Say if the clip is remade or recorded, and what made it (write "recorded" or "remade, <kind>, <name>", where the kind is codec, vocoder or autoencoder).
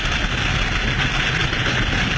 recorded